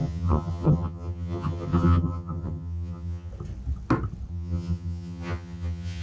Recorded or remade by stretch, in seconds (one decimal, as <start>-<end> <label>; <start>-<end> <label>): 0.0-3.3 remade; 3.3-4.3 recorded; 4.3-6.0 remade